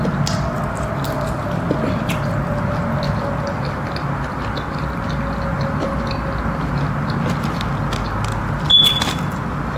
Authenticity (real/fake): real